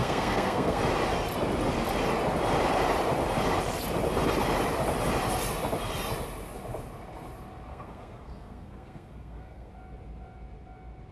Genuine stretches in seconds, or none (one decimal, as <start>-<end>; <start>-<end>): 0.8-7.7; 9.7-11.1